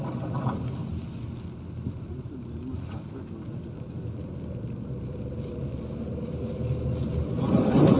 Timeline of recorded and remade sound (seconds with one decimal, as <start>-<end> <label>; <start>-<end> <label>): 0.0-8.0 recorded